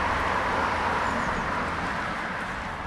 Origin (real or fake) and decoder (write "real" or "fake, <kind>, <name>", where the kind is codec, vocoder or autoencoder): fake, vocoder, BigVGAN v2